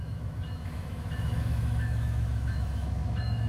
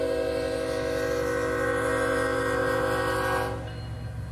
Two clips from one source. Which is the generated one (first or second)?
first